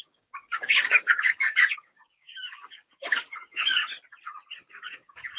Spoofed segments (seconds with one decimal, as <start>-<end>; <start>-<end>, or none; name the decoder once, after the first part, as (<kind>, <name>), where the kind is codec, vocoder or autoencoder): 0.0-3.8 (codec, DAC); 4.7-5.4